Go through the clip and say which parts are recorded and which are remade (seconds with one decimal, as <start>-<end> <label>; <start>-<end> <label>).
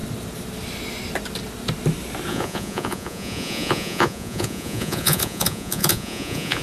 0.0-2.3 recorded; 2.3-6.6 remade